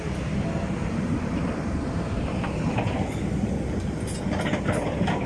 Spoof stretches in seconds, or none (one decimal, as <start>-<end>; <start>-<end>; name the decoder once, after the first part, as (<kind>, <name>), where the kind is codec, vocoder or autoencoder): 0.8-2.6 (vocoder, BigVGAN v2)